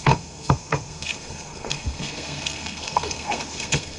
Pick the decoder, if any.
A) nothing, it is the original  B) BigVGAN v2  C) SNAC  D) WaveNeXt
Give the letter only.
C